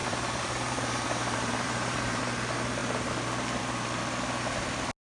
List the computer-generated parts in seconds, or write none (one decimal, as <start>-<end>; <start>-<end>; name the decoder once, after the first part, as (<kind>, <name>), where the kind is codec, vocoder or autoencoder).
0.0-2.2 (vocoder, BigVGAN v2)